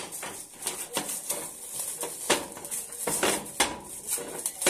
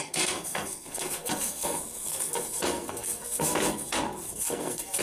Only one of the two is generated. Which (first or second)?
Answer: second